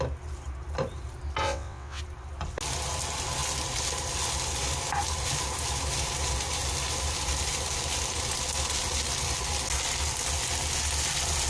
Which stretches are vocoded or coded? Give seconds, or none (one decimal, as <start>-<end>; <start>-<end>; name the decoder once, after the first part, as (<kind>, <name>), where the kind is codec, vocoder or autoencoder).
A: 1.4-2.0 (vocoder, WaveNeXt)